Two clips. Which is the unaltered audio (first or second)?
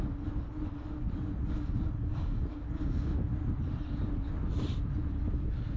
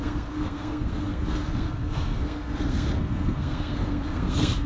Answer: first